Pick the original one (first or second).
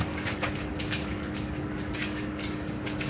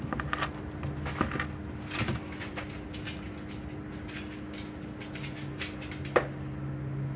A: second